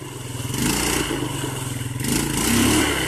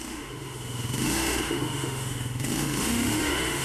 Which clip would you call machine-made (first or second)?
second